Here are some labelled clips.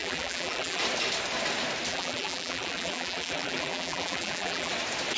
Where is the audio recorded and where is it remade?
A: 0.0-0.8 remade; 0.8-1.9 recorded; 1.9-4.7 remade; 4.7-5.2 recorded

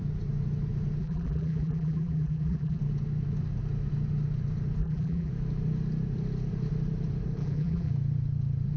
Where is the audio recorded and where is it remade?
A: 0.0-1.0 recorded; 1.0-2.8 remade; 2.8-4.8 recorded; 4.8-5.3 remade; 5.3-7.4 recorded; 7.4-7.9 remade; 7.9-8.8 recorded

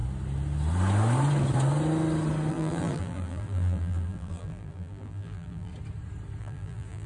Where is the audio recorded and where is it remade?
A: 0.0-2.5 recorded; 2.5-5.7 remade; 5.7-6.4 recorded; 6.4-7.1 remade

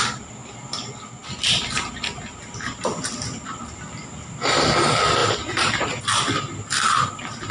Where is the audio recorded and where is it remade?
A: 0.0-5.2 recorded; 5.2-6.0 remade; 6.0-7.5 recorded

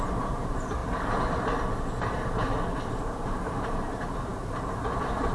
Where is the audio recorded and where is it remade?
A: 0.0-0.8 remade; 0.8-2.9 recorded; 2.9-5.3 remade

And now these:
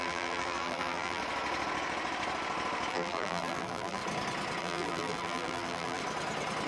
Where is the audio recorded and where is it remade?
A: 0.0-1.2 remade; 1.2-2.9 recorded; 2.9-4.0 remade; 4.0-4.6 recorded; 4.6-6.0 remade; 6.0-6.7 recorded